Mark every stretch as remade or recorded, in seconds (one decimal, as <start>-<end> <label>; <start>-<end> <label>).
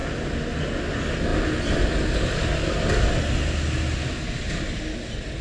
0.0-5.4 recorded